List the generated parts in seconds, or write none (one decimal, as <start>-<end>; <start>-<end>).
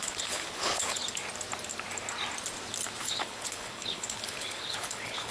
0.0-1.0; 3.0-5.3